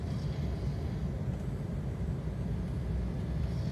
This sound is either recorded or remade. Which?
recorded